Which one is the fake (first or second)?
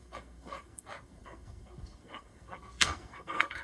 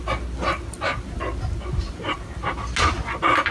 first